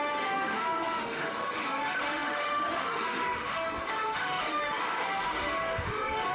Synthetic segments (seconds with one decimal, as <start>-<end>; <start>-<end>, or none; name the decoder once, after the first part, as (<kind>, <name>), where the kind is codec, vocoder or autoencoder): 0.0-6.3 (autoencoder, DAC-VAE)